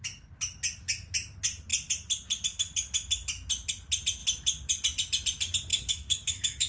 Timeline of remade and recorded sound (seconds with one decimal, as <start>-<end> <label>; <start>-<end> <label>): 0.0-5.7 recorded; 5.7-6.7 remade